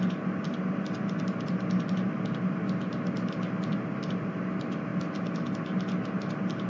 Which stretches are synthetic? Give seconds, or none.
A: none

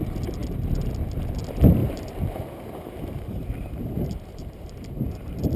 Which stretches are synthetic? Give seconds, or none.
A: 1.8-5.6 (vocoder, BigVGAN v2)

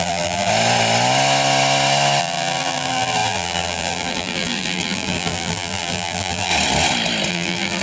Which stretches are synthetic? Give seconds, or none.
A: 0.0-0.5 (vocoder, BigVGAN v2); 2.2-6.5; 7.3-7.8